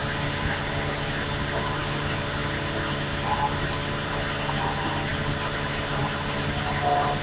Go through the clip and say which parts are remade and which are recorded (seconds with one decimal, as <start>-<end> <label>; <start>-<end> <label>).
0.0-7.2 recorded